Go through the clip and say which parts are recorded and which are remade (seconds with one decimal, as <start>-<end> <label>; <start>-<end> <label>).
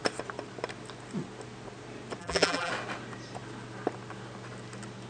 0.0-2.2 recorded; 2.2-2.7 remade; 2.7-5.1 recorded